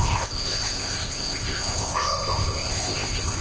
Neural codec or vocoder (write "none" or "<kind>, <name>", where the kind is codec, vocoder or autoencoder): codec, ZipCodec